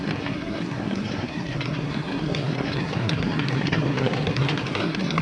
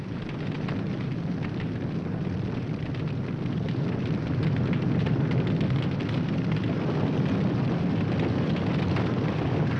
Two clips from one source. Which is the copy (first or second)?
first